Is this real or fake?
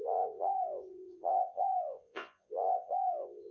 fake